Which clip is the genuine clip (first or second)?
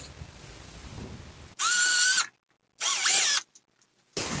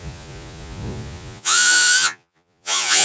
first